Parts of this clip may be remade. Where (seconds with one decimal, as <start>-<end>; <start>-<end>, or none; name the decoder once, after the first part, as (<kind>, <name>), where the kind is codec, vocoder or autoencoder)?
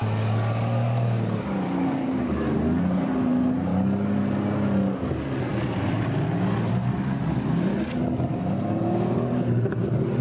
0.0-2.8 (codec, DAC); 3.7-4.2; 7.7-8.4